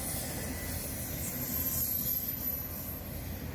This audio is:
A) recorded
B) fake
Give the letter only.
A